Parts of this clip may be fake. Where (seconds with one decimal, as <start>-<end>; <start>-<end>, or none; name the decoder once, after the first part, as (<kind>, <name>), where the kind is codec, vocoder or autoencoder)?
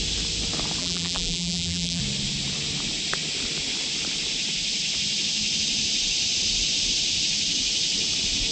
0.8-2.0 (vocoder, BigVGAN v2)